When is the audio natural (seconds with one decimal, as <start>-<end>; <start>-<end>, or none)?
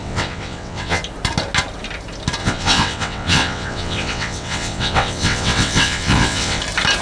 1.0-2.4; 6.6-7.0